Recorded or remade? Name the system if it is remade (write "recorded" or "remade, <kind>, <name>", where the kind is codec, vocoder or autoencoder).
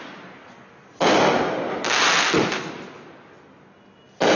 recorded